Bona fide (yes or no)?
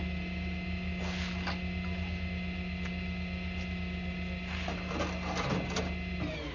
yes